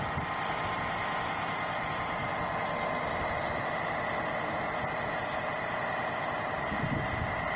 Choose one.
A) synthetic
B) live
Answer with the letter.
A